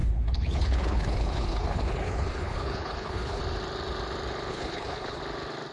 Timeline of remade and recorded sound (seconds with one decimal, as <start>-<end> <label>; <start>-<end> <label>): 0.0-3.4 remade; 3.4-4.5 recorded; 4.5-5.2 remade; 5.2-5.7 recorded